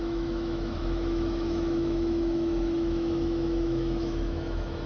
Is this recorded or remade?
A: remade